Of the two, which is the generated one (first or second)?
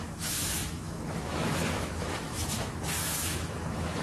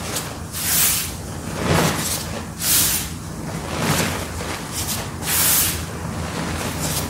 first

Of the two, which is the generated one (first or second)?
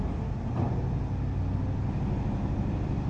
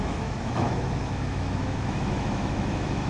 second